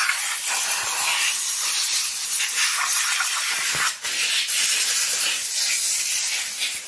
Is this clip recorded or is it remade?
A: recorded